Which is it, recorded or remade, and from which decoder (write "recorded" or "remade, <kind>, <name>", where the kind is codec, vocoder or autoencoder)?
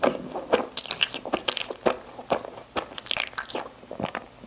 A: recorded